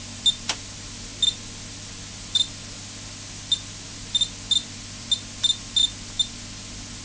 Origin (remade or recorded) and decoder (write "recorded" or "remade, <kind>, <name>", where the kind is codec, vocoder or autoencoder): recorded